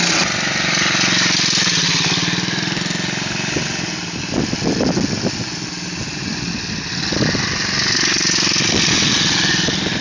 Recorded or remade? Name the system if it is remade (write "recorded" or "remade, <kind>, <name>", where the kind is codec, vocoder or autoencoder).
recorded